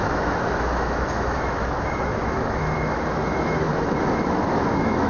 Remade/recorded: remade